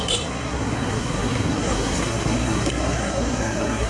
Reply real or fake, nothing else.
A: fake